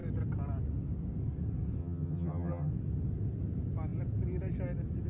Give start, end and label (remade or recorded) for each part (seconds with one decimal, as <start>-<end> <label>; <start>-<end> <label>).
0.0-1.8 recorded; 1.8-2.7 remade; 2.7-5.1 recorded